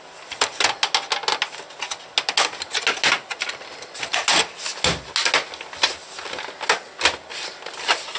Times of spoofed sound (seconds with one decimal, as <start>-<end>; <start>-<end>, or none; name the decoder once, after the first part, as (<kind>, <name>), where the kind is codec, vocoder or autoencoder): none